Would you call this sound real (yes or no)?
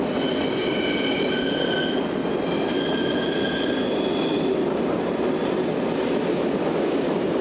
yes